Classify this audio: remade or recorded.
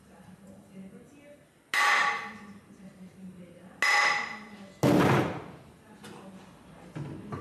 recorded